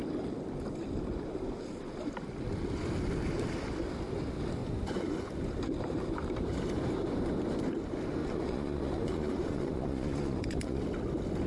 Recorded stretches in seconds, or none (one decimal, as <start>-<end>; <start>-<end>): 0.0-4.6; 5.3-8.2; 10.8-11.5